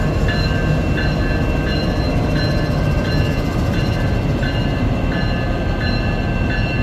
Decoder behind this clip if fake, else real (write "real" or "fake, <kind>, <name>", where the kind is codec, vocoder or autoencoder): real